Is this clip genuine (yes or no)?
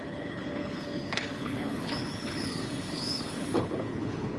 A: no